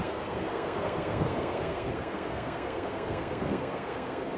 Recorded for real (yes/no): no